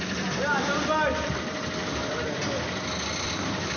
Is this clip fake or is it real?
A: real